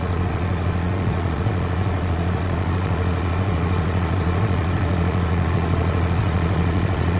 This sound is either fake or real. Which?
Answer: fake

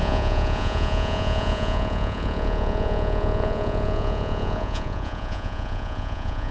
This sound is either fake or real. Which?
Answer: fake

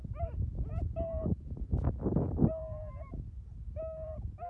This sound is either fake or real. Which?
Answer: real